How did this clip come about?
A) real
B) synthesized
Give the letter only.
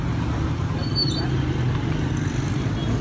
A